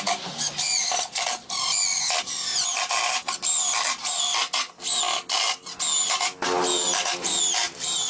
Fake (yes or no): no